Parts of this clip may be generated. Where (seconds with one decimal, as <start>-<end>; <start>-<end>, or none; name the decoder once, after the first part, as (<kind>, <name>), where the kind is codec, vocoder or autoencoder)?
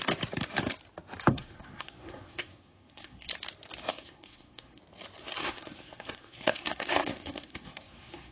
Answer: 1.3-3.3 (codec, SNAC); 3.9-4.8; 5.4-8.3